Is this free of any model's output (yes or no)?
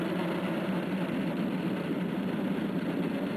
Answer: yes